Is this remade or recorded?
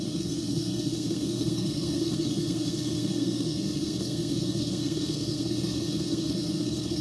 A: remade